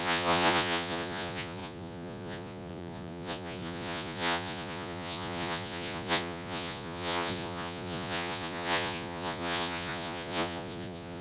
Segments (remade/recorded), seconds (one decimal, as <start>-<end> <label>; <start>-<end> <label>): 0.0-11.2 remade